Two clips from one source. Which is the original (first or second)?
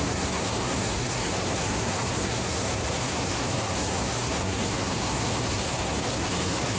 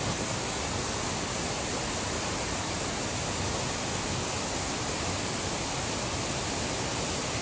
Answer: second